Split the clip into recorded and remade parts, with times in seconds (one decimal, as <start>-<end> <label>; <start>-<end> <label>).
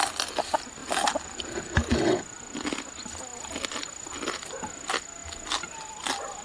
0.0-6.4 recorded